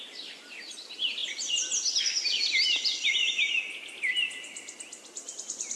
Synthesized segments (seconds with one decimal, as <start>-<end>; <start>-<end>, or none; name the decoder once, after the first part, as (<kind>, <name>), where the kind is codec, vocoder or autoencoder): none